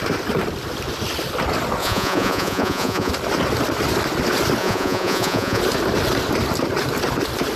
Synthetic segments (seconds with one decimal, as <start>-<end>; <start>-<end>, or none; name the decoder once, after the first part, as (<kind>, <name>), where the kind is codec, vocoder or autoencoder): 1.8-3.1 (vocoder, Vocos); 4.6-5.6